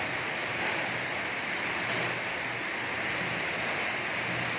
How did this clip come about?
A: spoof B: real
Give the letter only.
B